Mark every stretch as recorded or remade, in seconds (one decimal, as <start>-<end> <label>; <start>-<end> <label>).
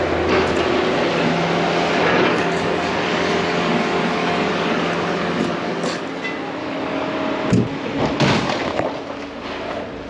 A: 0.0-2.1 recorded; 2.1-6.0 remade; 6.0-6.6 recorded; 6.6-7.1 remade; 7.1-10.1 recorded